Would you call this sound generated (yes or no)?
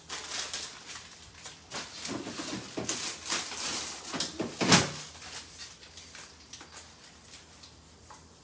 no